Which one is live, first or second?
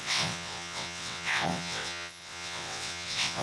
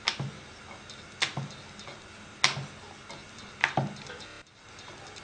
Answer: second